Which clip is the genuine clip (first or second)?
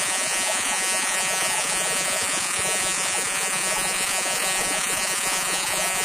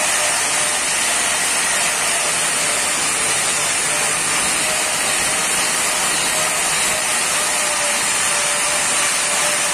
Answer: second